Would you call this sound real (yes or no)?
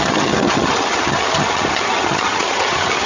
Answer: no